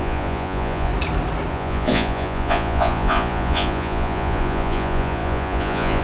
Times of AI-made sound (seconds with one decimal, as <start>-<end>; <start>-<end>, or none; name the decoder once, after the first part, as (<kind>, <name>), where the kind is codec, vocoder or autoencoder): 0.0-0.9 (vocoder, Vocos); 1.5-6.0